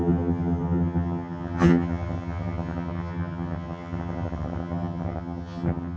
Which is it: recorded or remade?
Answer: remade